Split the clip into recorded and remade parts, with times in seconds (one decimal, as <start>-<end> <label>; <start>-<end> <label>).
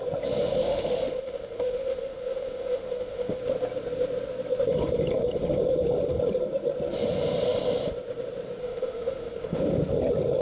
0.0-0.6 recorded; 0.6-3.4 remade; 3.4-8.6 recorded; 8.6-9.6 remade; 9.6-10.4 recorded